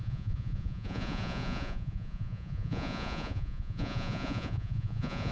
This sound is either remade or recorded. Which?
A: remade